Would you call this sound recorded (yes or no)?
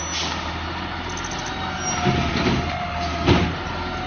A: yes